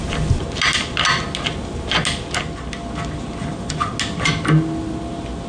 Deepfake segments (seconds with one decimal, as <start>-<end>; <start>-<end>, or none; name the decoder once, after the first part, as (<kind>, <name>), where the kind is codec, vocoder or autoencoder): 3.4-3.9 (vocoder, Vocos)

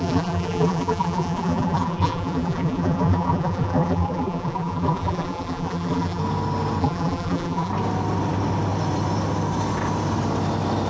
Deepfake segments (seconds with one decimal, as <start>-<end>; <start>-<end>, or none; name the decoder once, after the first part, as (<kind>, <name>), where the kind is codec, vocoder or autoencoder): 0.0-6.2 (vocoder, BigVGAN v2); 6.8-7.7

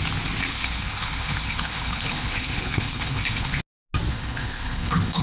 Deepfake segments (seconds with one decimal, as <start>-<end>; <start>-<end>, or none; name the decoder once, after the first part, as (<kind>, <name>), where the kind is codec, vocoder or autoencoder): 0.5-3.6 (codec, HILCodec); 4.1-5.2